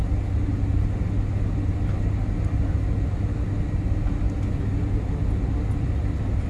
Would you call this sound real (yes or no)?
yes